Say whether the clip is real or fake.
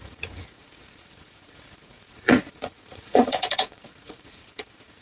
fake